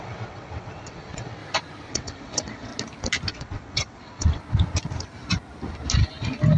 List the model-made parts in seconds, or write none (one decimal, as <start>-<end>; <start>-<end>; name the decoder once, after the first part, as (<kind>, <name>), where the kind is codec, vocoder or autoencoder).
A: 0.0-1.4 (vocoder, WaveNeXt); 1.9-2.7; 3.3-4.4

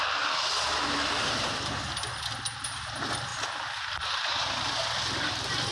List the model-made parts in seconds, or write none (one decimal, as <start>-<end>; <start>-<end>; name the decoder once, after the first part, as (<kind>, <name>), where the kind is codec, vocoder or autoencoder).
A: none

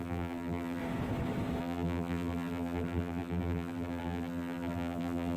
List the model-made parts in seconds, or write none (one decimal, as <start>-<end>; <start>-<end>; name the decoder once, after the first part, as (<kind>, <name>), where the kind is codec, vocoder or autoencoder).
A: 0.0-0.8 (vocoder, BigVGAN v2); 1.6-5.4

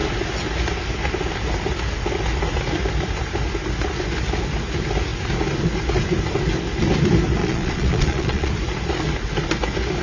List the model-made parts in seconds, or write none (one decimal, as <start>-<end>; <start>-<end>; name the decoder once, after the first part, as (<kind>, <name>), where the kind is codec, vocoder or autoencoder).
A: 7.4-8.5 (vocoder, Vocos)

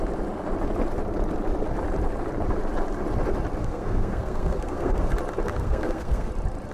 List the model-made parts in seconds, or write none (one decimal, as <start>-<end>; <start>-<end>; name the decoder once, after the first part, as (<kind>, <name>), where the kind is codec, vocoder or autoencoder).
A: 3.6-5.1 (codec, SNAC); 5.5-6.3